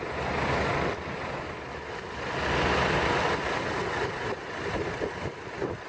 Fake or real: real